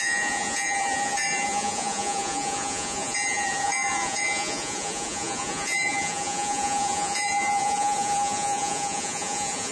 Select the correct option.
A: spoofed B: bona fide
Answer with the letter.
A